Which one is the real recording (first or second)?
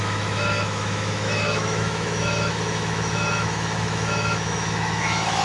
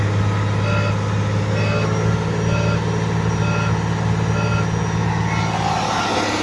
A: second